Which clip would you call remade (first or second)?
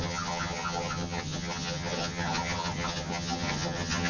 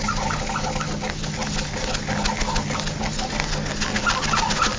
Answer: first